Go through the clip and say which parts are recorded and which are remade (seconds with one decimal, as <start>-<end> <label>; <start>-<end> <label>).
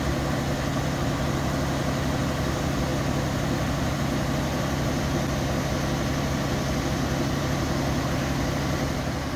0.0-9.4 recorded